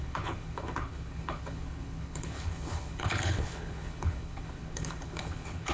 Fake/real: fake